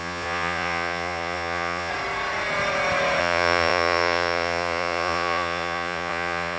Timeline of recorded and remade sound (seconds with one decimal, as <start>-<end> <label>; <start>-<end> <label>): 0.0-1.9 remade; 1.9-3.2 recorded; 3.2-6.6 remade